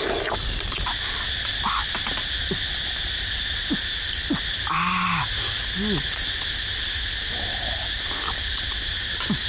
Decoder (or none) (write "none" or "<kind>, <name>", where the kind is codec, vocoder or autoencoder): none